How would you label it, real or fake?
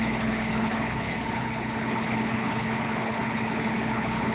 fake